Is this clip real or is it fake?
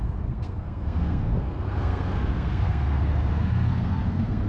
fake